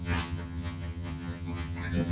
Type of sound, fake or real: fake